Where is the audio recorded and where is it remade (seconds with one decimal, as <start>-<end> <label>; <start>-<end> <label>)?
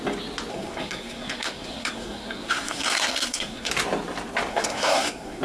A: 0.0-0.5 recorded; 0.5-3.7 remade; 3.7-4.5 recorded; 4.5-5.4 remade